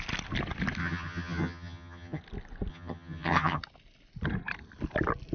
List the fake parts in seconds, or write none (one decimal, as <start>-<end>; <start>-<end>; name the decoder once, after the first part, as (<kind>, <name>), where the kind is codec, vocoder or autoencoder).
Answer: 0.8-2.2 (vocoder, HiFi-GAN); 2.7-3.6